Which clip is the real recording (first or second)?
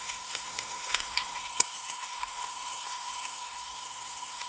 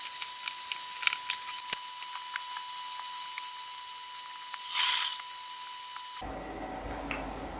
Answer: second